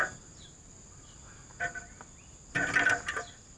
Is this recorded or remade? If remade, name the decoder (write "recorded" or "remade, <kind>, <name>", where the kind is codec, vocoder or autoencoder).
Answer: recorded